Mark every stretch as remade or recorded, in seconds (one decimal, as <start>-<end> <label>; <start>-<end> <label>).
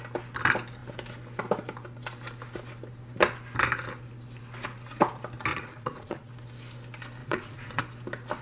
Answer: 0.0-5.5 recorded; 5.5-6.3 remade; 6.3-7.2 recorded; 7.2-7.8 remade; 7.8-8.4 recorded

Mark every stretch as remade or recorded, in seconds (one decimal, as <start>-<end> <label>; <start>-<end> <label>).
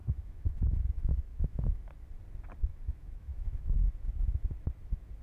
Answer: 0.0-0.6 remade; 0.6-1.3 recorded; 1.3-1.8 remade; 1.8-2.7 recorded; 2.7-3.9 remade; 3.9-5.2 recorded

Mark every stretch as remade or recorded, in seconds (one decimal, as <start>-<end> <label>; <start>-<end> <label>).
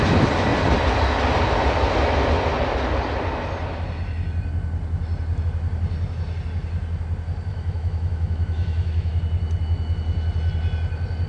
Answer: 0.0-7.5 recorded; 7.5-9.2 remade; 9.2-11.3 recorded